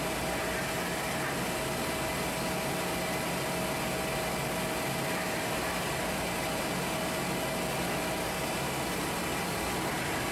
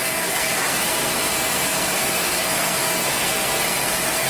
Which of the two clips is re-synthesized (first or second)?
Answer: second